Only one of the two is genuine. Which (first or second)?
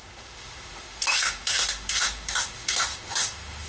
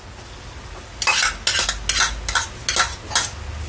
second